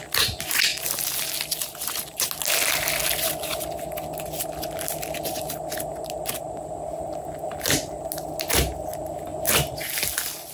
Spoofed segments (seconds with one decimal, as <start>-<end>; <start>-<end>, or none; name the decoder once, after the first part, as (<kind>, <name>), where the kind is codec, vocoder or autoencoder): none